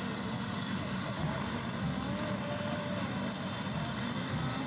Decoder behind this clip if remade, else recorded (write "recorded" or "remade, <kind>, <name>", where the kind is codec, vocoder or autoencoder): recorded